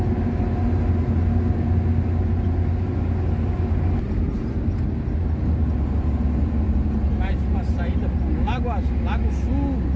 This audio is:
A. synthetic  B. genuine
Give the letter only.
B